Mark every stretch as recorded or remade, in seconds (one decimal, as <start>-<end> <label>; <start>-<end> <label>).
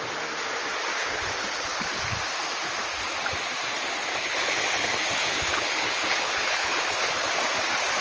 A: 0.0-1.0 recorded; 1.0-1.8 remade; 1.8-4.1 recorded; 4.1-7.3 remade; 7.3-8.0 recorded